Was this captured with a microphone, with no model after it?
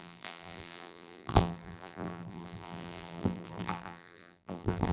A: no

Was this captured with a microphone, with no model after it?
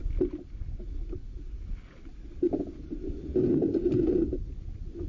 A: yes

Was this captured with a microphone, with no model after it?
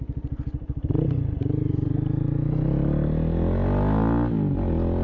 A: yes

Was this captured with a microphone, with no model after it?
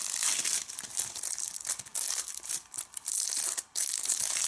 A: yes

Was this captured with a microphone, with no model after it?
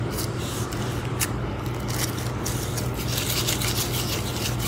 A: yes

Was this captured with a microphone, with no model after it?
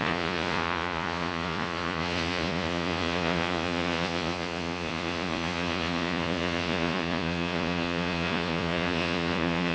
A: no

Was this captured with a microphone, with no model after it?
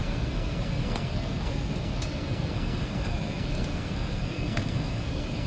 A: no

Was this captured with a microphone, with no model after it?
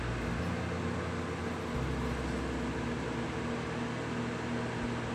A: yes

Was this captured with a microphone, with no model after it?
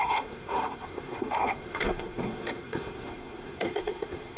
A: no